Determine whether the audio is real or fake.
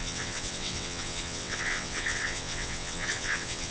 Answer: fake